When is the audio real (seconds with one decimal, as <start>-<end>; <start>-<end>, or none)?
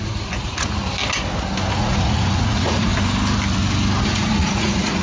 0.8-1.7; 2.9-4.0